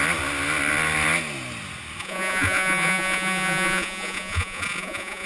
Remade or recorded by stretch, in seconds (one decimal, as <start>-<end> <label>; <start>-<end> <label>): 0.0-2.0 recorded; 2.0-5.3 remade